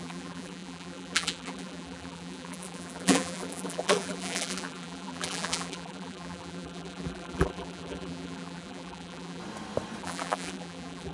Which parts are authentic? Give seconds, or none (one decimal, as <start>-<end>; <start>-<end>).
9.4-10.0